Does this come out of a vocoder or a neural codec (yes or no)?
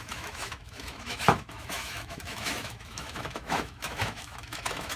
yes